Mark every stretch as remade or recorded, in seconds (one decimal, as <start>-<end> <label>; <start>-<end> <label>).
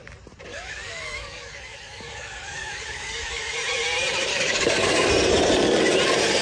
0.0-0.5 recorded; 0.5-3.5 remade; 3.5-4.3 recorded; 4.3-5.1 remade; 5.1-6.4 recorded